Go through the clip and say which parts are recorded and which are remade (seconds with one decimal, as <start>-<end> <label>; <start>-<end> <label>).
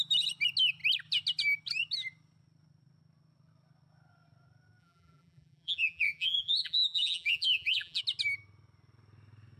0.0-4.8 recorded; 4.8-8.0 remade; 8.0-9.6 recorded